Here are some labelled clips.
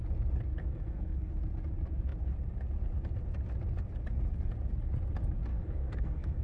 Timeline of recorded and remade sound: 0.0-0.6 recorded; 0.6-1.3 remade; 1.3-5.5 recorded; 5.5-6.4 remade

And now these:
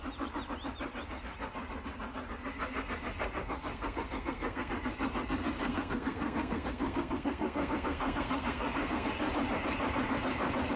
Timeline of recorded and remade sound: 0.0-3.7 recorded; 3.7-4.7 remade; 4.7-5.6 recorded; 5.6-9.1 remade; 9.1-10.8 recorded

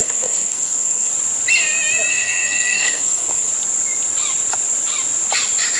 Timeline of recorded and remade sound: 0.0-1.1 remade; 1.1-2.1 recorded; 2.1-3.5 remade; 3.5-5.8 recorded